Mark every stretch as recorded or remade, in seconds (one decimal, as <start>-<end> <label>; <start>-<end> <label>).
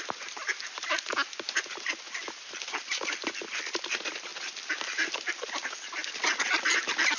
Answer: 0.0-7.2 recorded